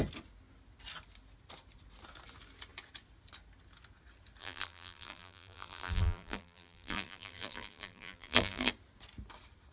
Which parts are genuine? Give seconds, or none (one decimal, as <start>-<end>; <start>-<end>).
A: 0.0-4.4; 8.7-9.7

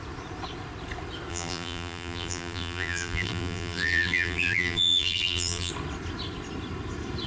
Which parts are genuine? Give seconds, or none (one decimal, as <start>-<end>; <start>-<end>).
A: 0.0-1.3; 5.7-7.3

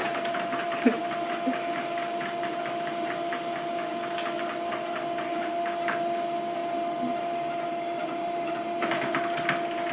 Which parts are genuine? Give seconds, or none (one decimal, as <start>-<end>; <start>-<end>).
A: 1.0-8.0; 9.2-9.9

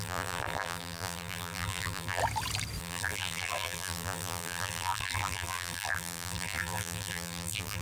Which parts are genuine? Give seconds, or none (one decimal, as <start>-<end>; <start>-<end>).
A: 2.2-2.8

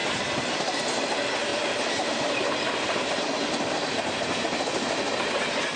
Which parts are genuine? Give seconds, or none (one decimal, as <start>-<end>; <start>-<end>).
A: 0.0-1.5; 3.5-5.8

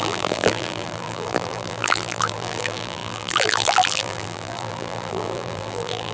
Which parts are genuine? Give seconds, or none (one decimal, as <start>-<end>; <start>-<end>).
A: none